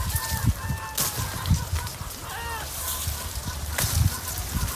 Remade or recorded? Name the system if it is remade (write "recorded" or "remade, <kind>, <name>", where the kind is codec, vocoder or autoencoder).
recorded